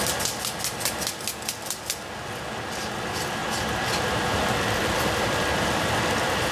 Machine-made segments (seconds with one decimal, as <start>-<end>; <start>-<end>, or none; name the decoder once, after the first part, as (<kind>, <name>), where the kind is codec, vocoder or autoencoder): none